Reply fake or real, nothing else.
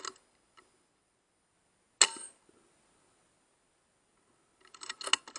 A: real